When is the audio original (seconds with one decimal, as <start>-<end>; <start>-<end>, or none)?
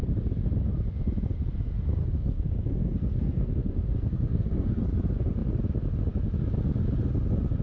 0.0-2.0; 4.8-7.6